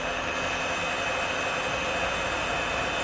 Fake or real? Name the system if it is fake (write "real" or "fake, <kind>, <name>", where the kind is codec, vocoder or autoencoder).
real